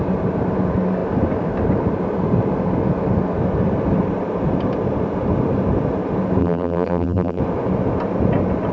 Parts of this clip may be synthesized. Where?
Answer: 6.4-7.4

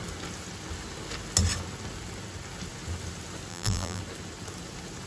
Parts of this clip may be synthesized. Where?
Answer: 3.5-4.0

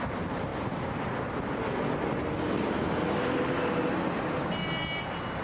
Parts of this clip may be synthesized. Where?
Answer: none

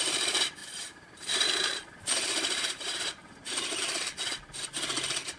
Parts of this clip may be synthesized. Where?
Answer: 0.6-3.8

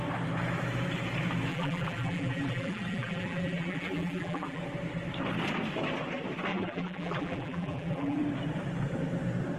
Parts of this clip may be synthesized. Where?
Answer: 1.5-4.6; 6.5-8.2

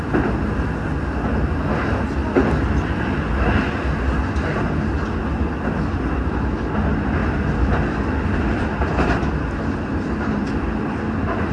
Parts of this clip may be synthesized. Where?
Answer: 7.2-11.0

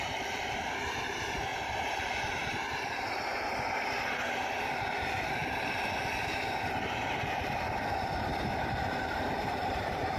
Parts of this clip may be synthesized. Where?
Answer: 0.0-5.4; 8.4-10.2